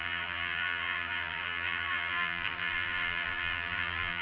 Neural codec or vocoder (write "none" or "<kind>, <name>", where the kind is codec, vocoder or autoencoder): vocoder, BigVGAN v2